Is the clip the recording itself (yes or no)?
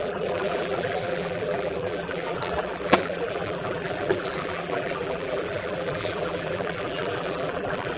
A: no